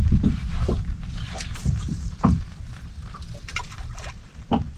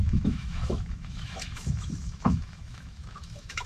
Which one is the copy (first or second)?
second